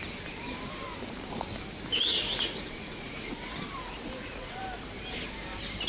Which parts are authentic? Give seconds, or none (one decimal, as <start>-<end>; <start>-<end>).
0.0-2.1; 4.6-5.9